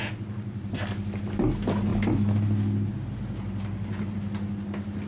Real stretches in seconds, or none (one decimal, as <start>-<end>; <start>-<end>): 0.0-5.1